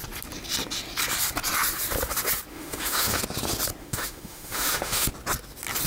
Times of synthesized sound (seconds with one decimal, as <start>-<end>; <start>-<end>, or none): 2.5-3.2; 3.8-5.1